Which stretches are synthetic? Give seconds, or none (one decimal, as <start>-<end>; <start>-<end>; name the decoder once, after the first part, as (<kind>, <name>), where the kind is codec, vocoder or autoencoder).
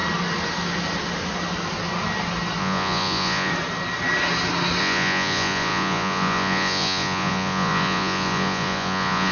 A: 2.6-3.5 (vocoder, Vocos); 4.8-9.3